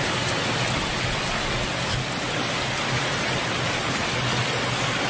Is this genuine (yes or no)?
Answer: yes